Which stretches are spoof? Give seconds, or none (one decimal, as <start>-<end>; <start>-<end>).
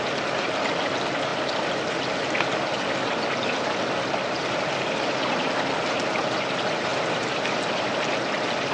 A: none